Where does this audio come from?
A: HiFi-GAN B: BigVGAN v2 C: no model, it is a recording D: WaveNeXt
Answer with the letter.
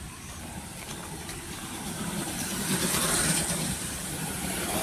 B